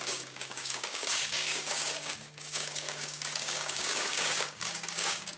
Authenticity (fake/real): fake